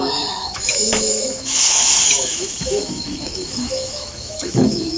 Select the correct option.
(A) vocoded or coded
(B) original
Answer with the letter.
A